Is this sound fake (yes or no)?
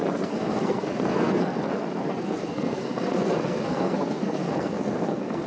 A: yes